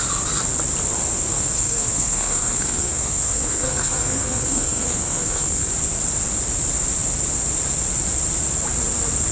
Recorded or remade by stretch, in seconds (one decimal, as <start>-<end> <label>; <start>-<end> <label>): 0.0-1.3 recorded; 1.3-5.7 remade; 5.7-9.3 recorded